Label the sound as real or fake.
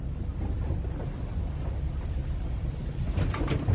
real